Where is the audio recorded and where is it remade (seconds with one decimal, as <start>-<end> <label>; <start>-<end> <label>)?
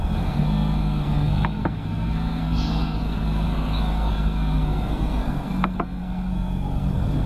0.0-7.3 remade